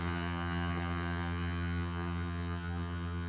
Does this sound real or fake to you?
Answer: fake